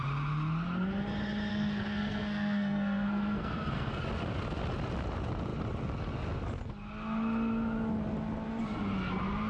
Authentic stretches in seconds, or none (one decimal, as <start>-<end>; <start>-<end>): 0.0-1.5; 4.0-9.5